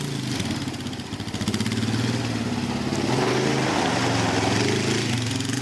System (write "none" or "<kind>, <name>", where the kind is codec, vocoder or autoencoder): none